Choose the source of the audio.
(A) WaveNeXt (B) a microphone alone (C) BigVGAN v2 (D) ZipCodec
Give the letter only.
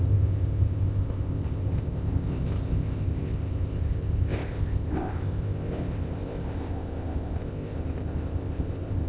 D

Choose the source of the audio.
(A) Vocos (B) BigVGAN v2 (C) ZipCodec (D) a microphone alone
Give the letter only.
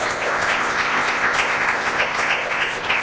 C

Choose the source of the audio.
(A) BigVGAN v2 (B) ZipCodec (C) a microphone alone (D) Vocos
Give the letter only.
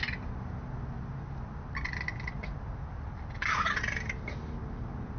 C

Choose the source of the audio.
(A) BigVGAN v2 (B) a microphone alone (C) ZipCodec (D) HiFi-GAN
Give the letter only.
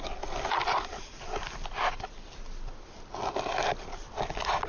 B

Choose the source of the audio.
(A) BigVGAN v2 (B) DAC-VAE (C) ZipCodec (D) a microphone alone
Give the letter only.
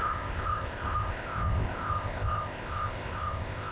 C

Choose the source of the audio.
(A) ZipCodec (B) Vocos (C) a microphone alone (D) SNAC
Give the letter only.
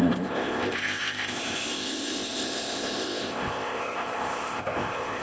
A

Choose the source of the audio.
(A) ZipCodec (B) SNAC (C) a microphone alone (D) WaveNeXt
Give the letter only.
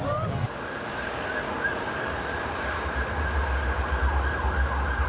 C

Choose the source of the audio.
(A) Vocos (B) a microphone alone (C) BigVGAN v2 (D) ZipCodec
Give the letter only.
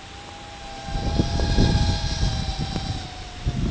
B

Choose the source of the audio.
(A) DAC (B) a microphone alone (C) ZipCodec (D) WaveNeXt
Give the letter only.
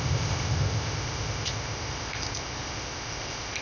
C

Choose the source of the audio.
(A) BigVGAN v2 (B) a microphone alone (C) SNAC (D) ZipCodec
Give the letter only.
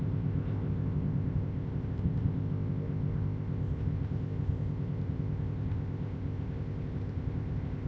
D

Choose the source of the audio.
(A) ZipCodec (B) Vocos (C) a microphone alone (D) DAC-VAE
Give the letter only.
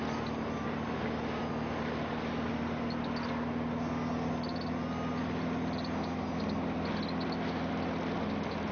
C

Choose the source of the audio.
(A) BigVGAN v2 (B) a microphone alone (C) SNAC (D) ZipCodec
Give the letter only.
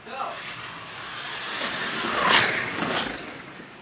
B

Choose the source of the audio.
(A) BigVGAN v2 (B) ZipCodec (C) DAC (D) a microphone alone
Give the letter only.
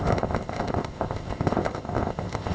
B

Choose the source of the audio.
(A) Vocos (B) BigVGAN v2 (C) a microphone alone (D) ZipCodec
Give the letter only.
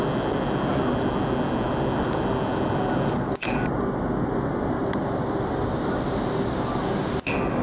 C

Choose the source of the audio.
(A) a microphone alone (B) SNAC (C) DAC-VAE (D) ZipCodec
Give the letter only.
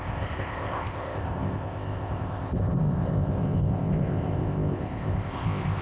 D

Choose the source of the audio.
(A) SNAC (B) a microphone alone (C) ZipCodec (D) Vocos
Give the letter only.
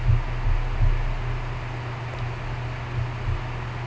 B